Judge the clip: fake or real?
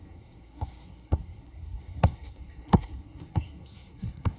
fake